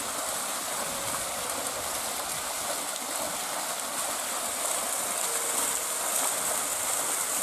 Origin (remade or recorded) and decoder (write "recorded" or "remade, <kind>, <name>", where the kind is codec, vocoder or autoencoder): recorded